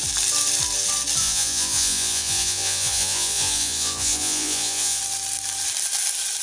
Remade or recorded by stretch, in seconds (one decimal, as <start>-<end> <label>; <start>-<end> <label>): 0.0-1.2 recorded; 1.2-5.0 remade; 5.0-6.4 recorded